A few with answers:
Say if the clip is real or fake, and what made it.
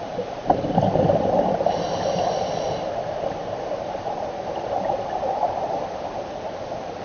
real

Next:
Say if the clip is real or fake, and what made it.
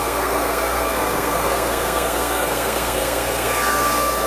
fake, codec, SNAC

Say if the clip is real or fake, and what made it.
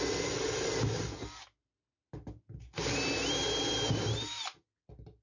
real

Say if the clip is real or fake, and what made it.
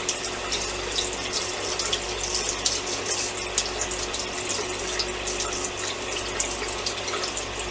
real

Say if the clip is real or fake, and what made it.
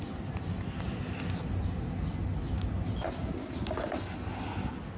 real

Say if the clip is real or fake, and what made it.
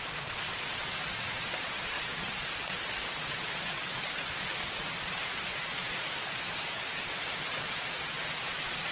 fake, vocoder, Vocos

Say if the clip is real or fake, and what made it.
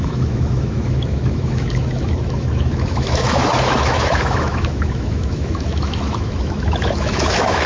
fake, autoencoder, DAC-VAE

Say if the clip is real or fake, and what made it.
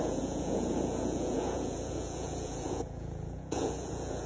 fake, vocoder, Vocos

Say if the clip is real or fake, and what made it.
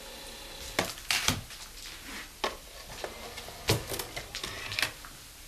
real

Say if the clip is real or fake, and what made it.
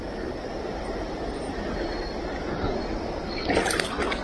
real